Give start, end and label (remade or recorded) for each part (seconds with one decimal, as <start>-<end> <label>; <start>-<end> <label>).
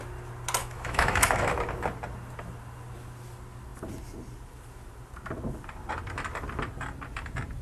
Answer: 0.0-0.6 recorded; 0.6-1.6 remade; 1.6-7.6 recorded